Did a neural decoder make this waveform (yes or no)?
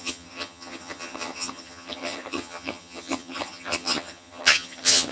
yes